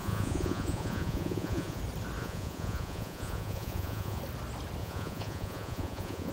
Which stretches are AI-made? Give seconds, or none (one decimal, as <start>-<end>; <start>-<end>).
0.0-1.8; 2.2-4.2; 4.8-6.3